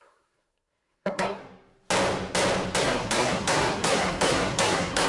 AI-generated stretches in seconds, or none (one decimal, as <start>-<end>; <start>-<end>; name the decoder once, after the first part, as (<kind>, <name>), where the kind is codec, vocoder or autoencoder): 0.0-1.4 (codec, SNAC); 2.8-5.1